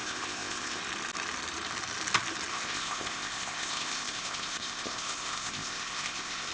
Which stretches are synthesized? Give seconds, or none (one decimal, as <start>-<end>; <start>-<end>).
0.0-0.8; 2.5-6.5